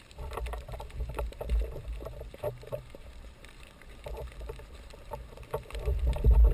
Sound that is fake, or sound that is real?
fake